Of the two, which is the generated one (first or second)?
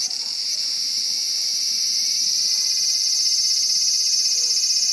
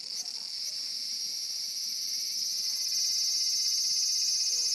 first